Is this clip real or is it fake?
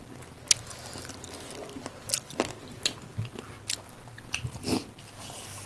real